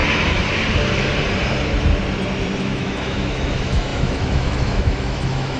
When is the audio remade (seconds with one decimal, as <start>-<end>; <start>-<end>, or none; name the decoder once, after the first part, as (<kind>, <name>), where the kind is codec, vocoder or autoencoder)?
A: 2.6-5.6 (autoencoder, DAC-VAE)